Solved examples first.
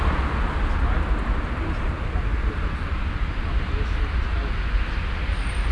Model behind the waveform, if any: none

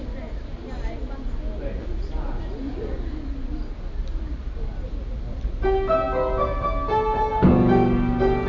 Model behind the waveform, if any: none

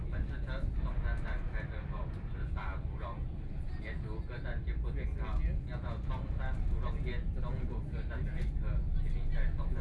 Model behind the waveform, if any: none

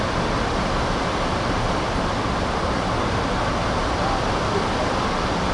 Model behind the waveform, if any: none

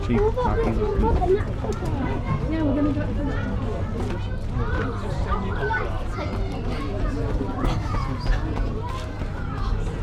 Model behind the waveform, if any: none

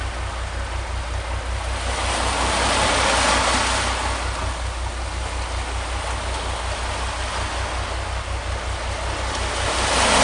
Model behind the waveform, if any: none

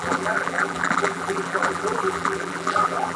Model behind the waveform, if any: vocoder, BigVGAN v2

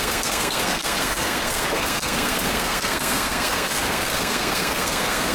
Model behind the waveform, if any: codec, SNAC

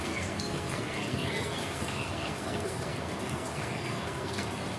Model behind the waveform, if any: codec, SNAC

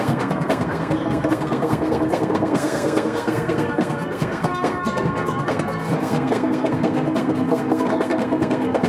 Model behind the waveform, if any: codec, SNAC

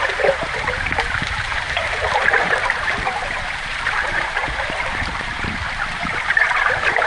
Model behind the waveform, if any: vocoder, BigVGAN v2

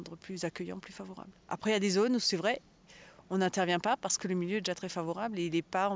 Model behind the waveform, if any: none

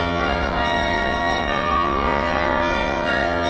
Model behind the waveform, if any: vocoder, WaveNeXt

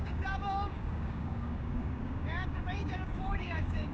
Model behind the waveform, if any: codec, DAC